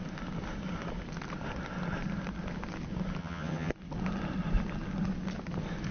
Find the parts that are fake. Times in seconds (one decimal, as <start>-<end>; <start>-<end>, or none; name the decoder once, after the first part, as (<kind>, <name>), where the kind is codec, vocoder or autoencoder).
3.2-3.7 (vocoder, HiFi-GAN)